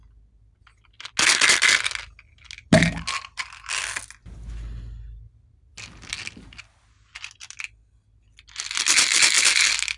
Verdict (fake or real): real